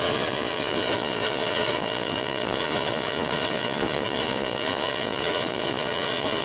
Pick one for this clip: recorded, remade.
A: remade